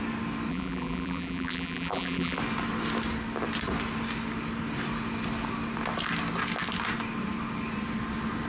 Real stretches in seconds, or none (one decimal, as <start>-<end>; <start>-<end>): 0.0-0.5; 2.4-8.5